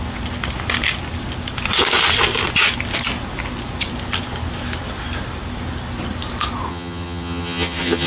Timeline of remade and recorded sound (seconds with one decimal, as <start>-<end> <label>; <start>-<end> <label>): 0.0-6.7 recorded; 6.7-8.1 remade